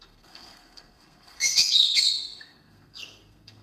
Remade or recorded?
remade